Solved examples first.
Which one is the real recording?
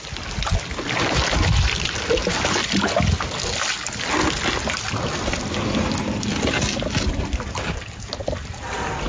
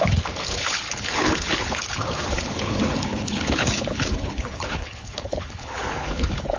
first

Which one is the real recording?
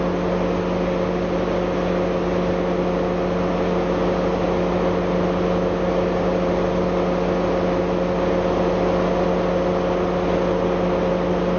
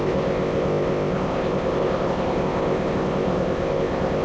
first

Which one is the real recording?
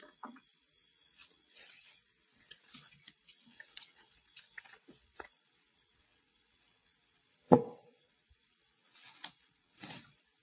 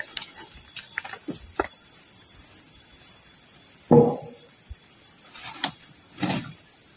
second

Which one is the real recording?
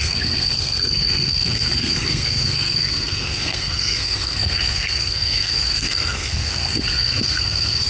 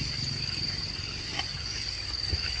second